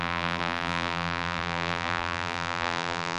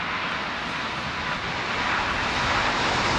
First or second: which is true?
second